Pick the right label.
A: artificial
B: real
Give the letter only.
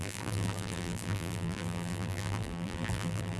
A